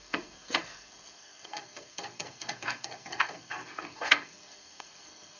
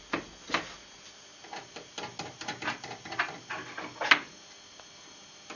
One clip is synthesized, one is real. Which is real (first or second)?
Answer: second